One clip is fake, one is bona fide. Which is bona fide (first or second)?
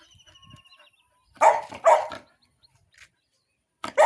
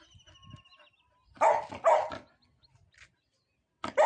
second